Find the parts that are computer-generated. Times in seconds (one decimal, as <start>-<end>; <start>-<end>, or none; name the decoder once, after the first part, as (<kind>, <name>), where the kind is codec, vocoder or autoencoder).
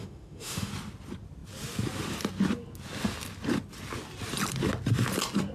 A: 0.0-0.7 (autoencoder, DAC-VAE)